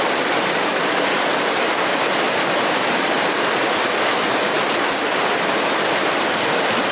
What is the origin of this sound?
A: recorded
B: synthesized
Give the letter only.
A